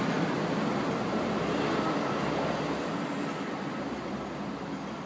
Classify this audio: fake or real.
real